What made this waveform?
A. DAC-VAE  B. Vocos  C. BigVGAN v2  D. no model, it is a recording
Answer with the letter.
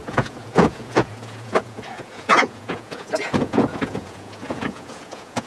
B